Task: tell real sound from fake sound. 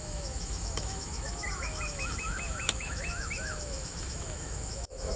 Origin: fake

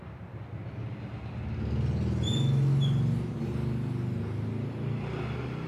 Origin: real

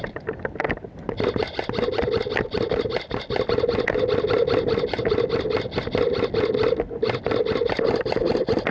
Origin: real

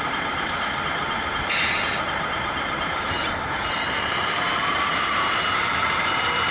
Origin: fake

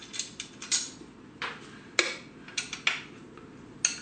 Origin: real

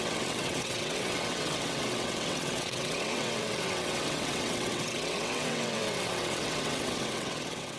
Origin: fake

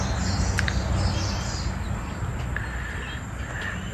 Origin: real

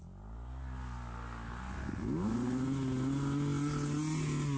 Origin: real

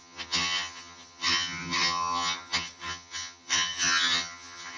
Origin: fake